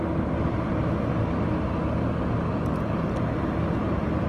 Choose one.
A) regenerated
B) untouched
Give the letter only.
B